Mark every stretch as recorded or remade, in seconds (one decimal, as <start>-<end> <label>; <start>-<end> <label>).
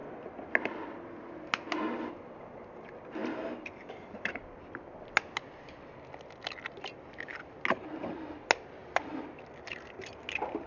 0.0-10.7 recorded